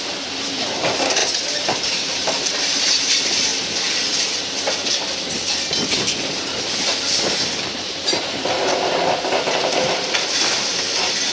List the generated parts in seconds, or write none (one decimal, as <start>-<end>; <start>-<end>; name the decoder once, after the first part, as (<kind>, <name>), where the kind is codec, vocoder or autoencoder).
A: 0.0-1.2 (vocoder, BigVGAN v2); 1.8-11.3